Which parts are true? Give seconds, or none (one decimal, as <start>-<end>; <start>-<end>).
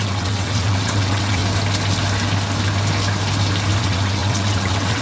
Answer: 1.4-3.8